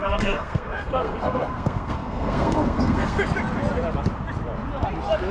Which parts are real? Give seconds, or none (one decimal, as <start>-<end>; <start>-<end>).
3.2-5.3